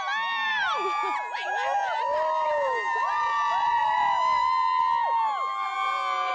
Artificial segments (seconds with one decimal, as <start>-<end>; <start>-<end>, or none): none